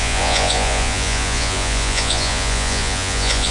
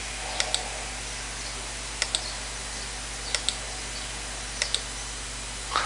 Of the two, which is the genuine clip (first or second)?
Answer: second